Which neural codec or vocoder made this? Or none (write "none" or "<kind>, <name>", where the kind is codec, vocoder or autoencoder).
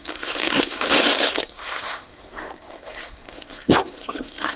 codec, SNAC